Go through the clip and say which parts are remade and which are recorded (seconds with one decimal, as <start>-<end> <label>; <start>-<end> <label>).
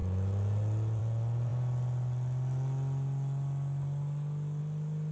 0.0-5.1 recorded